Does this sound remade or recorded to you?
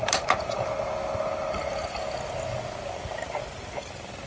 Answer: recorded